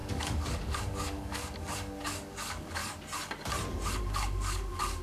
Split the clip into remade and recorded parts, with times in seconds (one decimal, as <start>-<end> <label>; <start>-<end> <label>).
0.0-2.8 remade; 2.8-4.0 recorded; 4.0-5.0 remade